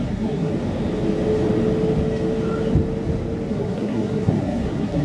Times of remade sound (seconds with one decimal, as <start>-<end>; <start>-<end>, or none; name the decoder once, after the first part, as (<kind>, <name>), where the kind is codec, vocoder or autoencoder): 0.0-0.5 (codec, SNAC); 3.5-5.0